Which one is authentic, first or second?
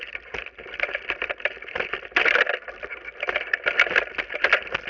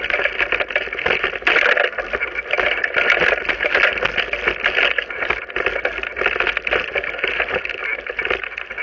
second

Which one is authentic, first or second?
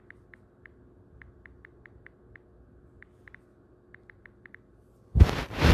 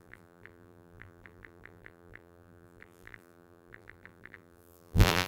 first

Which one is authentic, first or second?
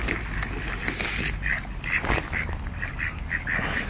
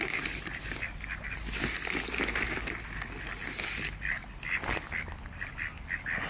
second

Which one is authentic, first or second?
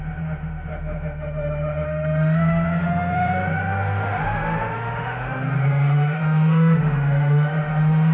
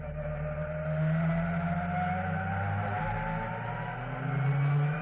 second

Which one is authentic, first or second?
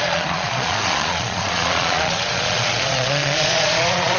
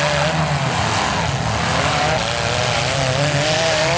second